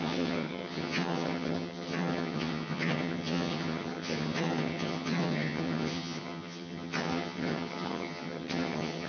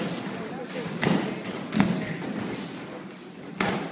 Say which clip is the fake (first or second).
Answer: first